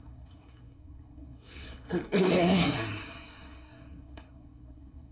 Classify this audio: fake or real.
fake